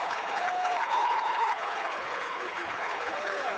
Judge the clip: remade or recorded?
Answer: remade